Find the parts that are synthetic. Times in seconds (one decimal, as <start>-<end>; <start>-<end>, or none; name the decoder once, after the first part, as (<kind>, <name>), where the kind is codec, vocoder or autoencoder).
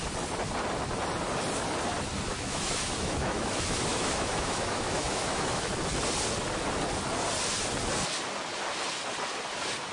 2.3-5.7 (autoencoder, DAC-VAE)